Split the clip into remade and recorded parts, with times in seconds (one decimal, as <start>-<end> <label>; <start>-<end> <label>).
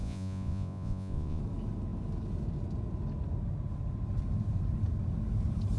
0.0-1.4 remade; 1.4-5.8 recorded